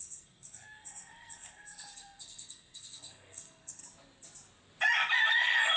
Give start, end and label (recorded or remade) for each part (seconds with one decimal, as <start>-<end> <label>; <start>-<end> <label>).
0.0-3.8 remade; 3.8-5.3 recorded; 5.3-5.8 remade